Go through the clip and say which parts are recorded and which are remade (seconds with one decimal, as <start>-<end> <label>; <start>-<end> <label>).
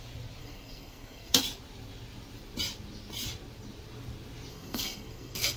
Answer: 0.0-0.4 recorded; 0.4-1.4 remade; 1.4-4.5 recorded; 4.5-5.6 remade